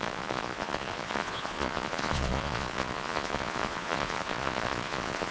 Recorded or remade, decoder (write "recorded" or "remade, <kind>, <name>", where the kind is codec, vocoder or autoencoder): remade, vocoder, Vocos